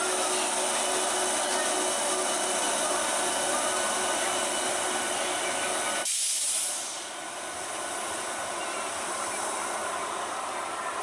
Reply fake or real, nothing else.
real